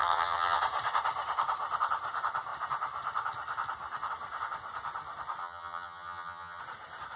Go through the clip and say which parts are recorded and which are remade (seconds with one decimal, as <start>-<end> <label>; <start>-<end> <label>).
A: 0.0-0.6 remade; 0.6-5.4 recorded; 5.4-6.6 remade; 6.6-7.2 recorded